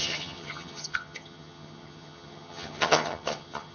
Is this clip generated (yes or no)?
yes